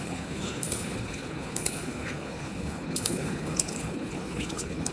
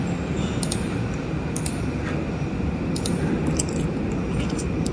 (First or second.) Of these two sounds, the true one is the second